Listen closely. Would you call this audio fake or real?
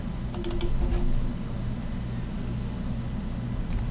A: real